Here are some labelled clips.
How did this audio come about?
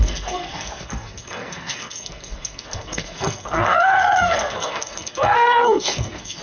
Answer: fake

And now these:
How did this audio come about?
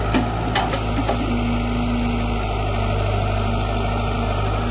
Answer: real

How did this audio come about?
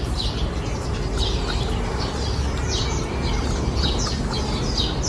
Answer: real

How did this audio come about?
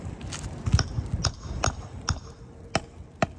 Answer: real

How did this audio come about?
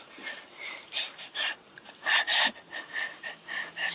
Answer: fake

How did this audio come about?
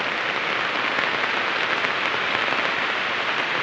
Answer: real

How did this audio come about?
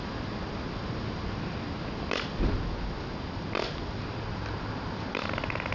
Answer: real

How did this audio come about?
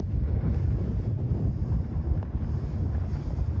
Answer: real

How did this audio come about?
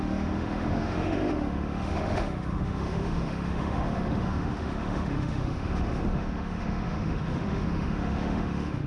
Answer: fake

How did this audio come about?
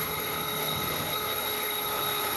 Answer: fake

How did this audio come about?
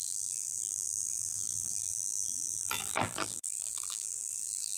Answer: fake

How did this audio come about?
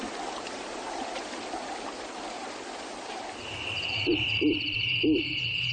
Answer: real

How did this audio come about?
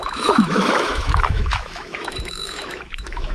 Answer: fake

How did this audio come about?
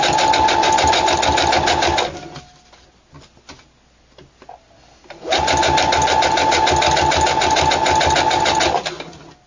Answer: real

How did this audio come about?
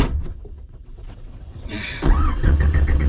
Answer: fake